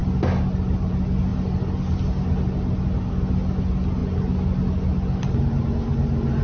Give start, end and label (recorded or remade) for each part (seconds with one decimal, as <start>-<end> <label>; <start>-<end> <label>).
0.0-6.4 recorded